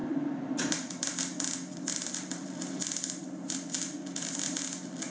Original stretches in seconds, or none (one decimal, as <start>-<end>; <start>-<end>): 1.2-1.7